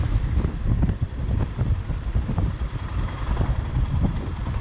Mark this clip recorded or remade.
remade